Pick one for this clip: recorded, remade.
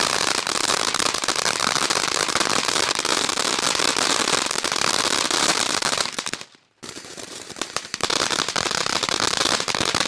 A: remade